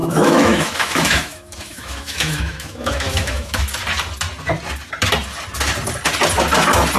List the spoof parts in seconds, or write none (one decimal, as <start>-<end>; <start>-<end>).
0.0-3.6